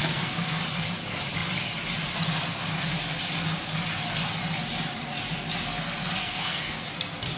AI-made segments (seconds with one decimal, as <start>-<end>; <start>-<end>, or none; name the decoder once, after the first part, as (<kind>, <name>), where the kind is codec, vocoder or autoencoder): 0.0-0.6 (codec, SNAC); 6.2-6.9